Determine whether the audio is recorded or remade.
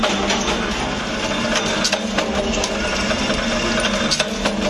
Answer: recorded